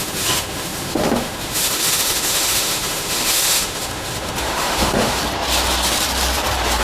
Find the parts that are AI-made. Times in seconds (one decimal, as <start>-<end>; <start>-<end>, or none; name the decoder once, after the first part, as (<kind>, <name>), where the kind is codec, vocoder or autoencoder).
0.0-5.2 (autoencoder, DAC-VAE)